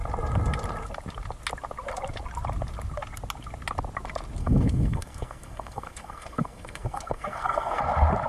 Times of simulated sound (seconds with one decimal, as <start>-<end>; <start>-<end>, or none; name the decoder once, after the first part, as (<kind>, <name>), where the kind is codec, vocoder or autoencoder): 4.4-7.8 (codec, SNAC)